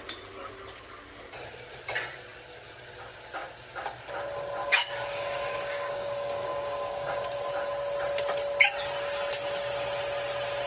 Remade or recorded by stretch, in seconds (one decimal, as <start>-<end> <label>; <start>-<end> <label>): 0.0-4.6 recorded; 4.6-7.5 remade; 7.5-10.7 recorded